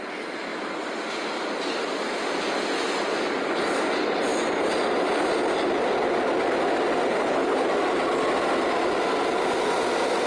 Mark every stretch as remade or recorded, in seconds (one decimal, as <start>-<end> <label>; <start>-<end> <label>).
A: 0.0-7.1 recorded; 7.1-7.7 remade; 7.7-10.3 recorded

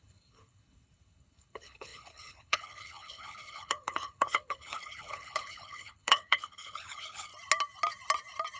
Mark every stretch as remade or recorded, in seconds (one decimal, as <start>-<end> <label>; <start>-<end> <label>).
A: 0.0-7.3 remade; 7.3-8.6 recorded

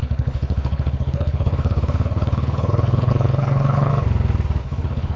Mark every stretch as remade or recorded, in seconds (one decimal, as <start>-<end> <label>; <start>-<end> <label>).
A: 0.0-3.9 remade; 3.9-4.6 recorded; 4.6-5.2 remade

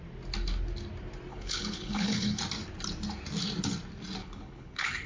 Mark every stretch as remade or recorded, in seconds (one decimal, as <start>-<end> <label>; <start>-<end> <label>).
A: 0.0-1.3 recorded; 1.3-2.4 remade; 2.4-4.2 recorded; 4.2-5.1 remade

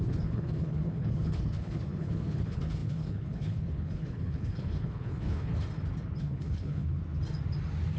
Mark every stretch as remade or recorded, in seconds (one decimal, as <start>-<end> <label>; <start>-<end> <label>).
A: 0.0-5.5 remade; 5.5-6.2 recorded; 6.2-7.0 remade; 7.0-8.0 recorded